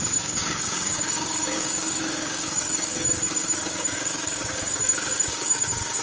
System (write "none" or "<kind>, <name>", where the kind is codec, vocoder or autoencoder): codec, DAC